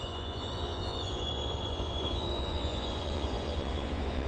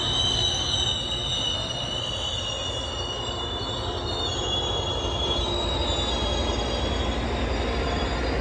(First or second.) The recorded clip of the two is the second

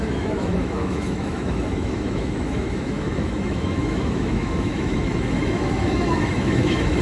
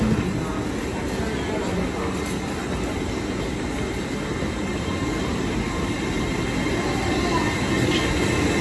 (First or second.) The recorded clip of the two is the second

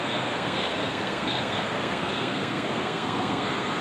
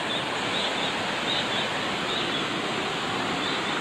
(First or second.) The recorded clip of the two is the second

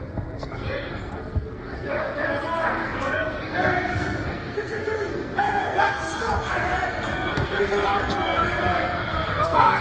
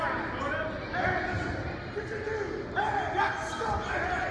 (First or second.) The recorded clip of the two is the second